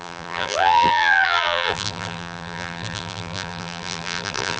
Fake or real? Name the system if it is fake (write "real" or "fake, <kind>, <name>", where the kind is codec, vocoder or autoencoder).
fake, vocoder, BigVGAN v2